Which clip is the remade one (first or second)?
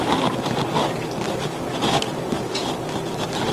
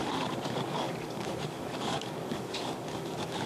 second